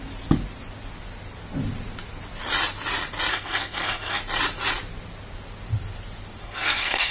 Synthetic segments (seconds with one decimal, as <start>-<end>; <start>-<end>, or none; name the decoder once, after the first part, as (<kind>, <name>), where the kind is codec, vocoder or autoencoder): 3.3-4.2 (codec, SNAC); 6.4-7.1